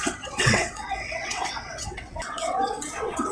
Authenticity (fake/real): fake